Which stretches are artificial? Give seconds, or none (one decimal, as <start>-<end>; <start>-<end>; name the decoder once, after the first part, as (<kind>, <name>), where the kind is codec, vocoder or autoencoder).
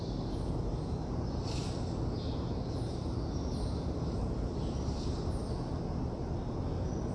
none